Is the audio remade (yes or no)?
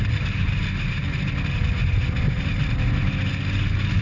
no